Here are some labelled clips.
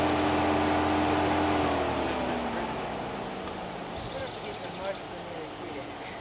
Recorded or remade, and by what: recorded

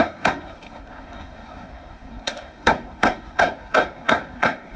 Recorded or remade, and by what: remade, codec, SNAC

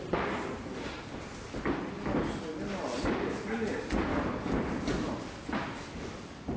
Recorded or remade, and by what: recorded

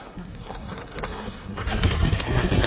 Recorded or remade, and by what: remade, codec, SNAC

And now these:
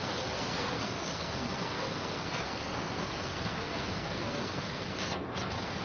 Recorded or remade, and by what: remade, codec, SNAC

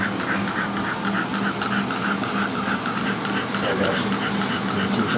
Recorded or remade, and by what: recorded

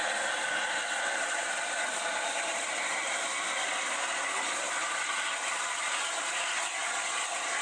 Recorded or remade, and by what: recorded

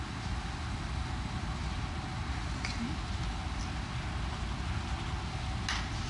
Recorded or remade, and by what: recorded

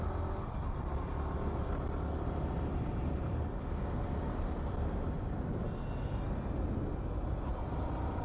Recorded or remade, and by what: recorded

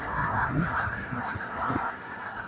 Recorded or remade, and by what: remade, codec, SNAC